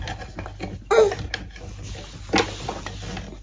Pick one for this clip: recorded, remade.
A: recorded